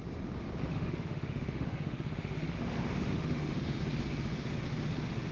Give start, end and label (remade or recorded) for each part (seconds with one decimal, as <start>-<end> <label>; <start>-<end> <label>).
0.0-0.7 recorded; 0.7-3.8 remade; 3.8-5.3 recorded